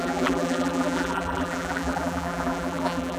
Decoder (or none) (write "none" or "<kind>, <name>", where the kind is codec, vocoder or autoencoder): vocoder, BigVGAN v2